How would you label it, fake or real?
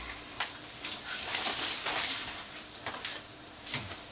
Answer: fake